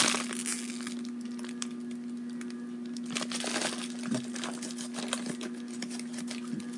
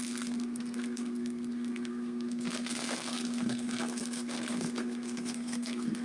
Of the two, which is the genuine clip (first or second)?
first